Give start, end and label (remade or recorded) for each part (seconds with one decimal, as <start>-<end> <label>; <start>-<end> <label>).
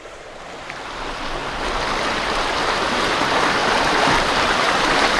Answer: 0.0-1.4 remade; 1.4-2.2 recorded; 2.2-5.2 remade